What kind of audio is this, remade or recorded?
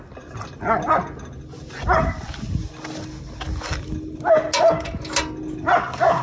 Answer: recorded